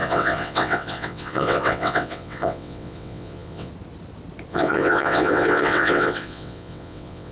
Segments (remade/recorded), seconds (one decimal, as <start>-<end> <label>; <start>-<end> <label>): 0.0-3.7 remade; 3.7-4.5 recorded; 4.5-7.3 remade